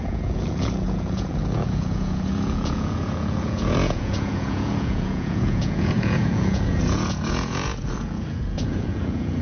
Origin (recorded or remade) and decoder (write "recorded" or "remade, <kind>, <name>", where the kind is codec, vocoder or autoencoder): remade, vocoder, Vocos